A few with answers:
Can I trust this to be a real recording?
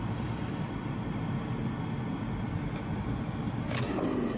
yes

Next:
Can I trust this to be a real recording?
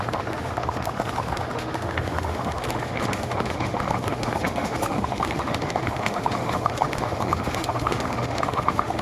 no